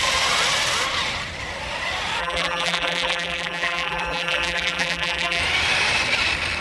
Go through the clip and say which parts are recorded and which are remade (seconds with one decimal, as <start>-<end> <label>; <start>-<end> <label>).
0.0-2.2 recorded; 2.2-5.4 remade; 5.4-6.6 recorded